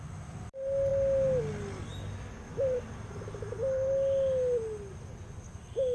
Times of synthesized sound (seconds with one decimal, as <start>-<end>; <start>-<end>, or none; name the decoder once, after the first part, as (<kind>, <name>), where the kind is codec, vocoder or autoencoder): none